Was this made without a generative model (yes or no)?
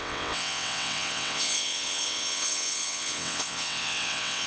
no